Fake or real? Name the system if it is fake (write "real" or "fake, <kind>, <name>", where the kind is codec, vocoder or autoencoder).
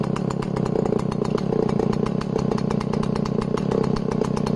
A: real